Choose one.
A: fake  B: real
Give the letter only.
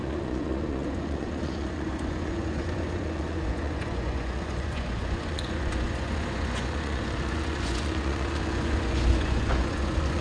A